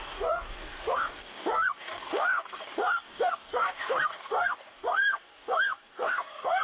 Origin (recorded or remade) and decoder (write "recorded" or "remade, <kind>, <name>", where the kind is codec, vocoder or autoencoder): remade, codec, DAC